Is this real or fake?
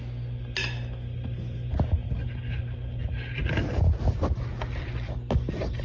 real